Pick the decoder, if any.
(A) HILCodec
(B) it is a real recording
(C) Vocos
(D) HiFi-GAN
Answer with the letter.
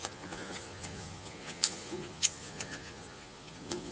C